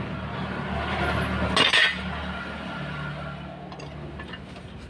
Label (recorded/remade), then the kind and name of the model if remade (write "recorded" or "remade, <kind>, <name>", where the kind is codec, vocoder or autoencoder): recorded